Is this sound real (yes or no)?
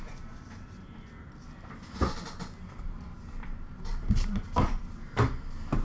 yes